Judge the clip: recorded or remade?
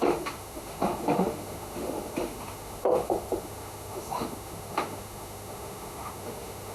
remade